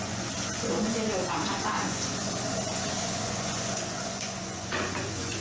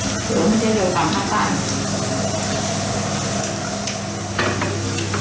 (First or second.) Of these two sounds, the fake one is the first